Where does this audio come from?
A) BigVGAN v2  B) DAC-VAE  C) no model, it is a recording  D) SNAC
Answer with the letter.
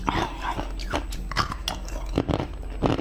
C